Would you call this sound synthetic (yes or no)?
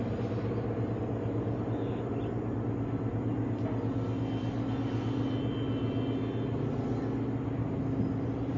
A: no